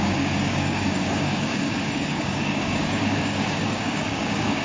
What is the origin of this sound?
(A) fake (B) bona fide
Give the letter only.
A